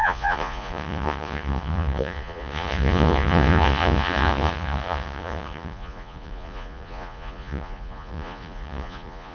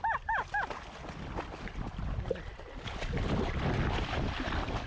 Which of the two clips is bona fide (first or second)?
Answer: second